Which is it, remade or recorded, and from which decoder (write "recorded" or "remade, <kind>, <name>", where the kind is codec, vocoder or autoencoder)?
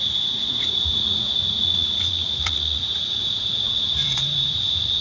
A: remade, vocoder, Vocos